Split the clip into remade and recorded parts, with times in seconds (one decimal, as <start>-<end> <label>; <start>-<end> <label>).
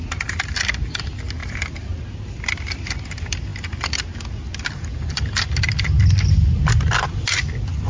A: 0.0-7.9 recorded